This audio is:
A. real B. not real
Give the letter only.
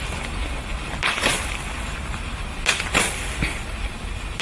A